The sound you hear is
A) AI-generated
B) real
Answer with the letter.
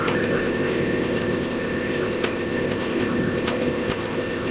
A